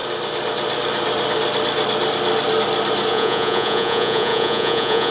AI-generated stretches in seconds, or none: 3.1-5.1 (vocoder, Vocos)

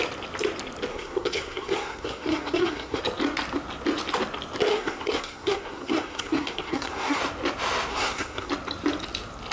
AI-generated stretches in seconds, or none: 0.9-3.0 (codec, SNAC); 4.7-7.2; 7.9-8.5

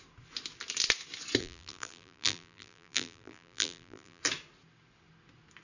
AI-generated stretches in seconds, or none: 1.4-4.2 (vocoder, BigVGAN v2)

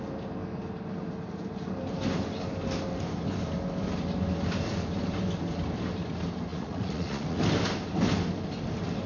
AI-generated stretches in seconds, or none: 6.5-7.4 (vocoder, Vocos)

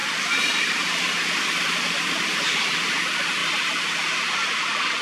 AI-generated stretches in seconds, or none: 0.0-3.0 (vocoder, BigVGAN v2); 3.4-4.6